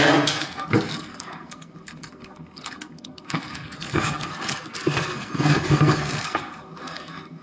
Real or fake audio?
fake